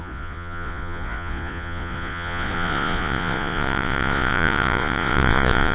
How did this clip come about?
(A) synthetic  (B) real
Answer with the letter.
A